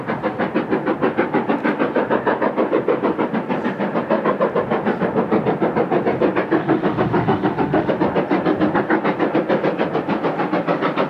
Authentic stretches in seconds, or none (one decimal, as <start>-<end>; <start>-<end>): 0.0-6.6; 7.9-11.1